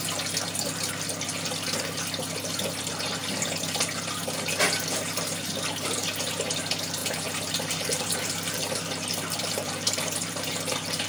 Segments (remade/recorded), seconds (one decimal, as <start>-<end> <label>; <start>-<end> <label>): 0.0-7.0 recorded; 7.0-11.1 remade